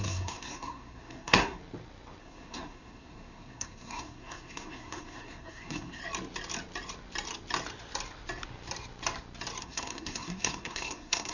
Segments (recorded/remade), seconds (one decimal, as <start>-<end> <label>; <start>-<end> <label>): 0.0-1.6 remade; 1.6-2.2 recorded; 2.2-6.0 remade; 6.0-9.6 recorded; 9.6-11.3 remade